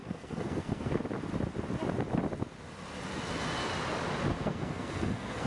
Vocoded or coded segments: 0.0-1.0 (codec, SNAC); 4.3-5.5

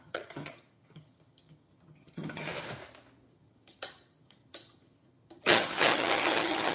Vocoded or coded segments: 0.0-2.5 (vocoder, HiFi-GAN); 3.3-6.7

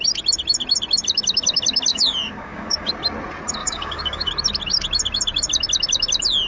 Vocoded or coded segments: 1.9-2.9 (codec, DAC); 3.6-4.3

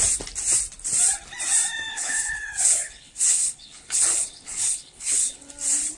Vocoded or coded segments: 1.9-5.5 (codec, HILCodec)

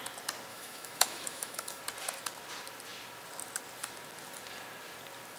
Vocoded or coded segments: 0.5-1.8 (autoencoder, DAC-VAE)